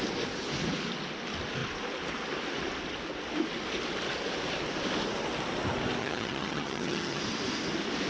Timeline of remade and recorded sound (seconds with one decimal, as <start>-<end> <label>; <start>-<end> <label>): 0.0-6.0 recorded; 6.0-7.2 remade; 7.2-8.1 recorded

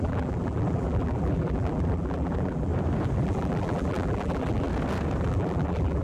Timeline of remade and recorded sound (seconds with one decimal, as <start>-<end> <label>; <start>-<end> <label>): 0.0-2.7 remade; 2.7-3.2 recorded; 3.2-4.7 remade; 4.7-5.2 recorded; 5.2-6.0 remade

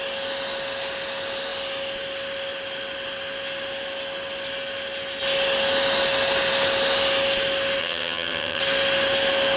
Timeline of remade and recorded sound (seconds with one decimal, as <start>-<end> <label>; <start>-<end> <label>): 0.0-7.8 recorded; 7.8-8.6 remade; 8.6-9.6 recorded

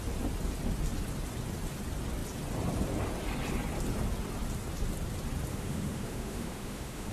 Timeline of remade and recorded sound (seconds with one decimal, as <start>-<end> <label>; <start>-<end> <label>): 0.0-5.5 recorded; 5.5-7.1 remade

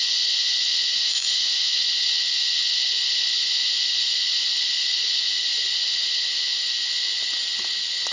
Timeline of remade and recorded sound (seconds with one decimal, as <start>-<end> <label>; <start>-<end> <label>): 0.0-1.0 recorded; 1.0-1.7 remade; 1.7-8.1 recorded